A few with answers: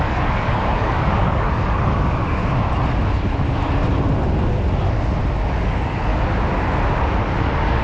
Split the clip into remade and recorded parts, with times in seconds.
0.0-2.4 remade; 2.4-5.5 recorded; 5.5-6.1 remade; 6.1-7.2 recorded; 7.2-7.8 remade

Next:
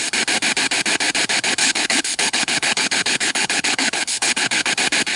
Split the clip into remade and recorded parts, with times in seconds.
0.0-1.6 recorded; 1.6-4.7 remade; 4.7-5.2 recorded

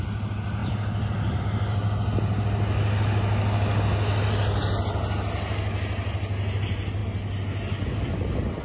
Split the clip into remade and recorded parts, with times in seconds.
0.0-8.6 recorded

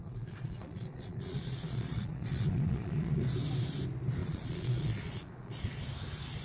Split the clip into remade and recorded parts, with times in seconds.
0.0-3.2 remade; 3.2-4.2 recorded; 4.2-5.8 remade; 5.8-6.4 recorded

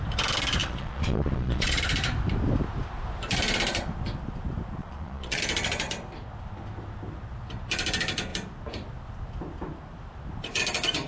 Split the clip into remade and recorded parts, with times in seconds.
0.0-0.6 recorded; 0.6-1.8 remade; 1.8-4.8 recorded; 4.8-5.4 remade; 5.4-11.1 recorded